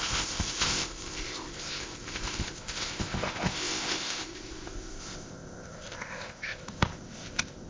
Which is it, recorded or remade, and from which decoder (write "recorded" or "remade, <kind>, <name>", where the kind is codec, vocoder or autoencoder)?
remade, codec, ZipCodec